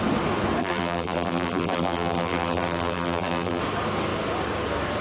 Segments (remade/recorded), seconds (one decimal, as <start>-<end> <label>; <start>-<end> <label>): 0.0-0.6 recorded; 0.6-3.6 remade; 3.6-5.0 recorded